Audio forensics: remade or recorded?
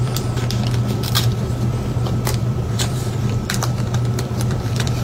remade